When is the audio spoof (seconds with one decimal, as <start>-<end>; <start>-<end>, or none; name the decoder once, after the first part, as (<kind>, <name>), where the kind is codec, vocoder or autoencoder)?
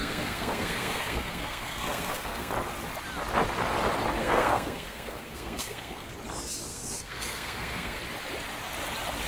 0.0-2.5 (codec, SNAC); 4.2-6.1; 6.7-8.0